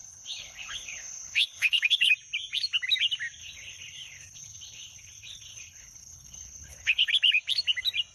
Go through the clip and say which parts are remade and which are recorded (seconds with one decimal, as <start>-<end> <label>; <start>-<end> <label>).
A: 0.0-2.1 remade; 2.1-3.4 recorded; 3.4-7.1 remade; 7.1-8.1 recorded